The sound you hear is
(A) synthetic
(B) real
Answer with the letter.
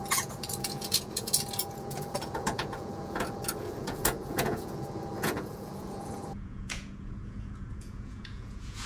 A